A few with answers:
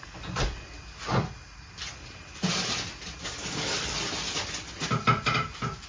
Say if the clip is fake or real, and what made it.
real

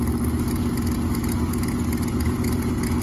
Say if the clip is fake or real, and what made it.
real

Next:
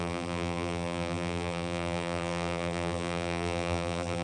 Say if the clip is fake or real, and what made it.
fake, vocoder, BigVGAN v2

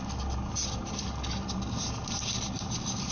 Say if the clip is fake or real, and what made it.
real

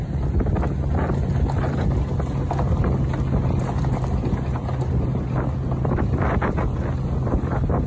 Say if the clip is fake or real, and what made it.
real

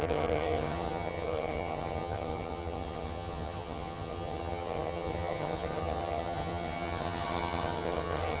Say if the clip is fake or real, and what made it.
fake, vocoder, HiFi-GAN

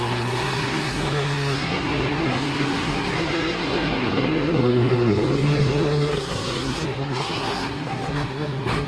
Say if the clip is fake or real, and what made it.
fake, codec, SNAC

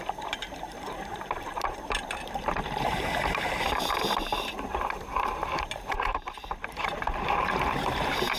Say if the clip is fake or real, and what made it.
fake, vocoder, BigVGAN v2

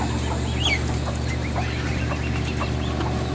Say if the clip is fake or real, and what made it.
real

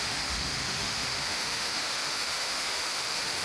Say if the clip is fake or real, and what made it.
fake, autoencoder, DAC-VAE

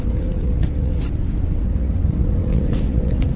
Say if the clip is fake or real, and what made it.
fake, vocoder, WaveNeXt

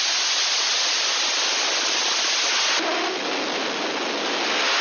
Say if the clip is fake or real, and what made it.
real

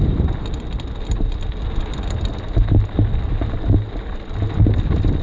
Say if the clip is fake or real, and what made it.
real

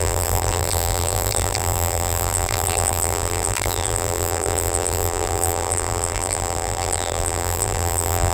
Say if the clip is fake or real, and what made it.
fake, vocoder, BigVGAN v2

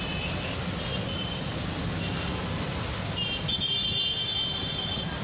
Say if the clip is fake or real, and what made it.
real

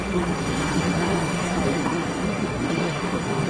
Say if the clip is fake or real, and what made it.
fake, codec, SNAC